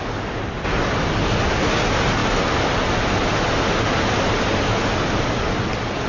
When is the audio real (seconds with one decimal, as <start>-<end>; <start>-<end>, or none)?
0.0-6.1